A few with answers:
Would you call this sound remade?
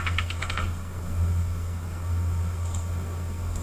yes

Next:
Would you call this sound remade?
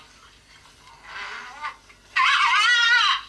no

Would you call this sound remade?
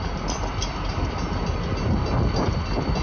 no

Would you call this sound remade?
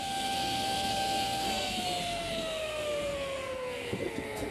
yes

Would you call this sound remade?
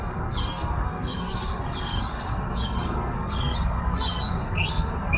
yes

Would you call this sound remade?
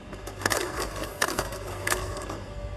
yes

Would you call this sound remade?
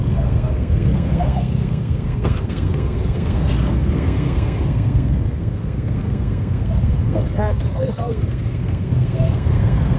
yes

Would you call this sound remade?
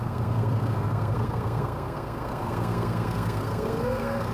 yes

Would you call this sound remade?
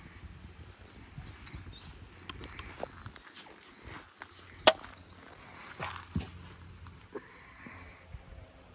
no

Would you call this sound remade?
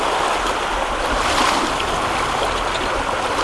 no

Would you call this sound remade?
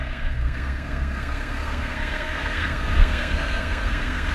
yes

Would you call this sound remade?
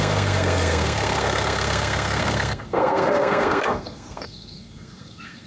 yes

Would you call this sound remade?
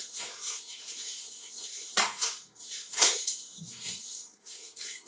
yes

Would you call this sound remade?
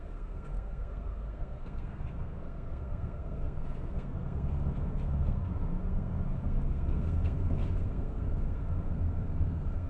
yes